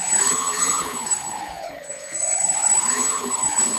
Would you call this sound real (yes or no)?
no